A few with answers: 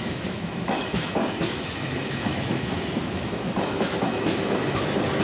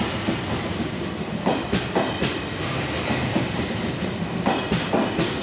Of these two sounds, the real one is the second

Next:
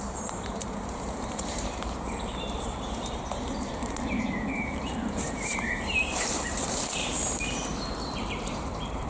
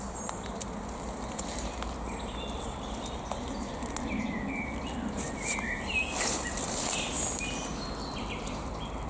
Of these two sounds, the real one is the second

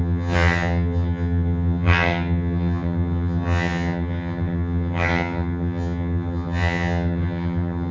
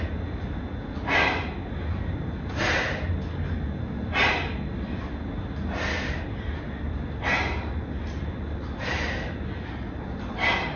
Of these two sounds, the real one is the second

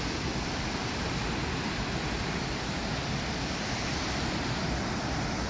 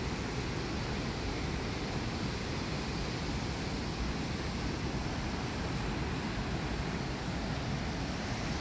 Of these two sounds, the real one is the second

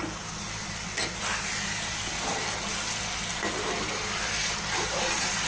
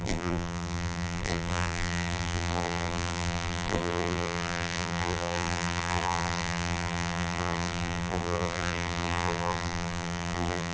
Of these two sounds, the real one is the first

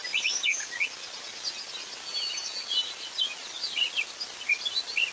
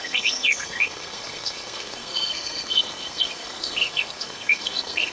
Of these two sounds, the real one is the first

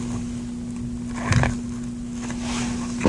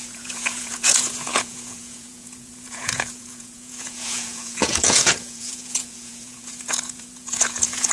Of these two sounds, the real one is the first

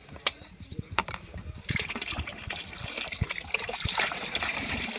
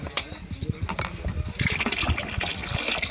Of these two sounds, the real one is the second